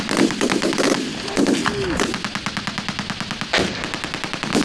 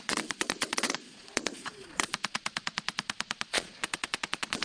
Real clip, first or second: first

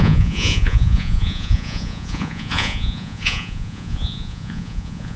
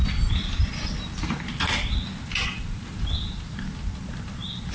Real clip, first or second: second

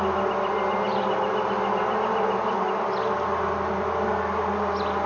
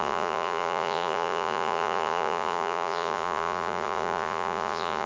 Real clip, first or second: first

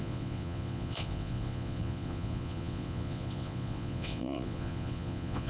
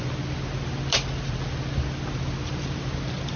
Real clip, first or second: second